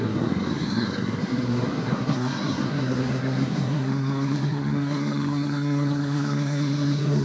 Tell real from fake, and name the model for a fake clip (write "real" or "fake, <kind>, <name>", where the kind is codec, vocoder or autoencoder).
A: fake, codec, SNAC